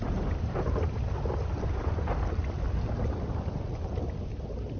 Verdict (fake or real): real